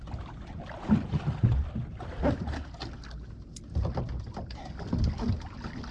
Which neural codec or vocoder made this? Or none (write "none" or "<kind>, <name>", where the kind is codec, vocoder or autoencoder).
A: none